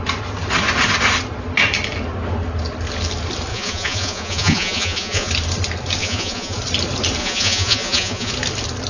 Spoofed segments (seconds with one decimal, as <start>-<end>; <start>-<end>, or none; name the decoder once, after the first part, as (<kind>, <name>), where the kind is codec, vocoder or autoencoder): 3.5-5.3 (vocoder, Vocos); 6.0-6.6; 7.2-8.3